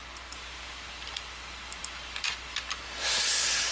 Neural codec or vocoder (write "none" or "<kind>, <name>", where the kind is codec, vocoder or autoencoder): none